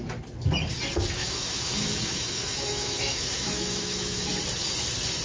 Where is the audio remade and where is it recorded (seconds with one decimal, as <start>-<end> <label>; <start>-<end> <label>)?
0.0-1.2 recorded; 1.2-4.3 remade; 4.3-5.2 recorded